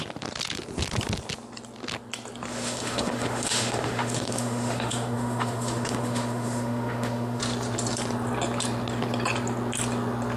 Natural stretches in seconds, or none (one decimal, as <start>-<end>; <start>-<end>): 0.0-2.5; 7.4-10.4